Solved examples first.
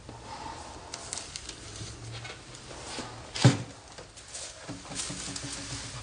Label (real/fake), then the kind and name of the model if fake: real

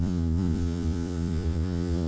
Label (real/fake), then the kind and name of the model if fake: fake, vocoder, Vocos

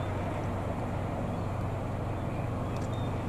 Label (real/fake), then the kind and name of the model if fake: real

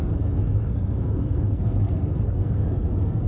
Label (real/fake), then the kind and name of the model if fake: fake, codec, SNAC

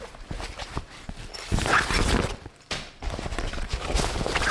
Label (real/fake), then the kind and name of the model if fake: real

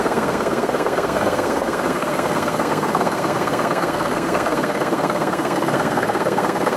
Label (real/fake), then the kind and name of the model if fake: fake, codec, SNAC